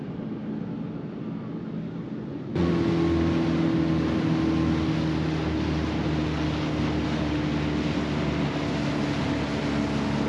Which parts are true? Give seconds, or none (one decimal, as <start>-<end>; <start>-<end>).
0.0-2.2; 2.7-10.3